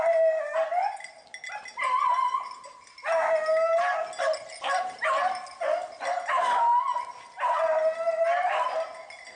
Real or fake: real